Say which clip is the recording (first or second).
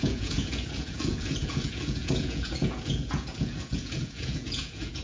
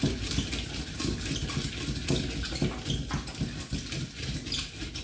second